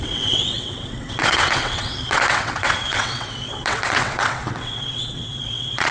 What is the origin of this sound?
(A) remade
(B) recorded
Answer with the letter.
A